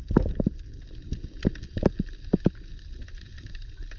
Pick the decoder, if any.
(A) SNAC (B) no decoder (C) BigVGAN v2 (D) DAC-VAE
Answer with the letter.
B